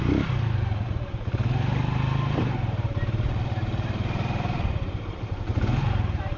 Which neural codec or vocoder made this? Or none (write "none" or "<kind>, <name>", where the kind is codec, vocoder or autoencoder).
vocoder, BigVGAN v2